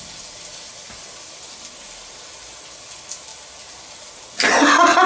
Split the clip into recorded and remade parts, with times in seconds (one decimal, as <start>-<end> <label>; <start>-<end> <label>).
0.0-5.1 recorded